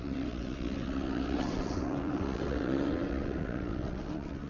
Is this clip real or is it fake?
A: fake